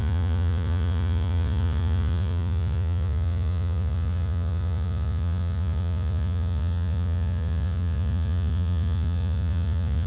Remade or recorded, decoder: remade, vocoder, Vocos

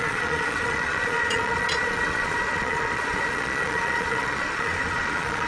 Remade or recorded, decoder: remade, vocoder, Vocos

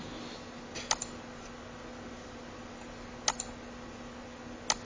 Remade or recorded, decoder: recorded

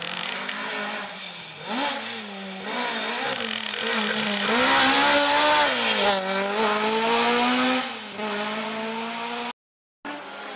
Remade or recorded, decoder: recorded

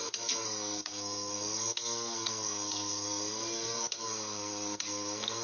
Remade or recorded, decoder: remade, codec, SNAC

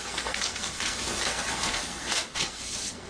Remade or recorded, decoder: remade, codec, SNAC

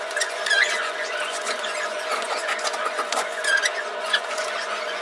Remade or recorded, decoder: remade, vocoder, Vocos